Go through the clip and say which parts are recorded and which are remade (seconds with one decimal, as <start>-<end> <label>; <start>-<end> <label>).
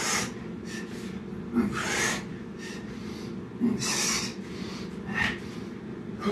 0.0-2.3 recorded; 2.3-3.1 remade; 3.1-4.3 recorded; 4.3-4.9 remade; 4.9-6.3 recorded